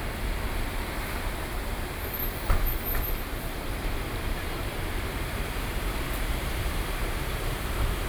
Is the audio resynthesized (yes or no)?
yes